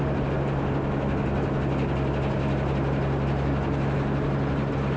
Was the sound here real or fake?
real